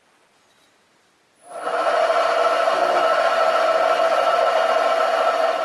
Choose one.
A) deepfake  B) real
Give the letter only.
B